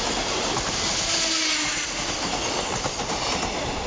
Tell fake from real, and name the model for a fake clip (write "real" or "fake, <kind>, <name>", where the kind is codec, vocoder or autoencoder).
real